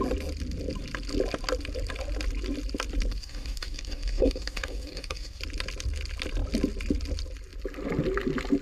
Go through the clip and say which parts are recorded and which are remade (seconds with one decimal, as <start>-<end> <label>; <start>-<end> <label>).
0.0-3.1 recorded; 3.1-5.4 remade; 5.4-8.6 recorded